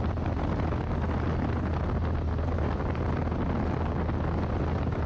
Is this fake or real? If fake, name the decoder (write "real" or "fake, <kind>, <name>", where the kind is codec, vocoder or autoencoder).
real